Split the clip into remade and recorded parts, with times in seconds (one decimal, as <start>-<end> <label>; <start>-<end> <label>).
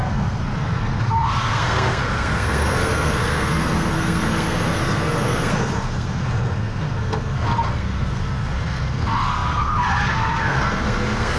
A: 0.0-11.4 remade